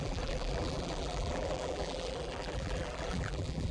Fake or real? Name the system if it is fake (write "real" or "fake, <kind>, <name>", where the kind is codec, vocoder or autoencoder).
fake, vocoder, BigVGAN v2